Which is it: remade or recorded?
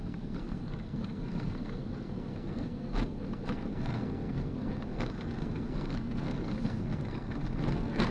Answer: remade